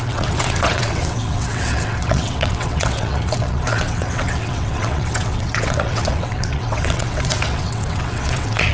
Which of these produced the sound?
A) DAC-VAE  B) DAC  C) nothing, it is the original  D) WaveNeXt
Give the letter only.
D